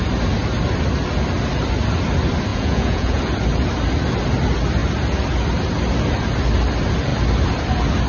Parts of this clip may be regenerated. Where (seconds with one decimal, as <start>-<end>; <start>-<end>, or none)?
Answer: 2.5-3.2